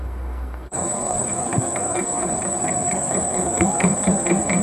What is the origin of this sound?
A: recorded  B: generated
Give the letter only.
B